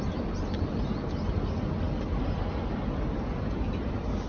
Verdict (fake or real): real